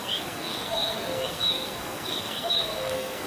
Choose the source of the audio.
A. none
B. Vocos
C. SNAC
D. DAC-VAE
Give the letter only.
C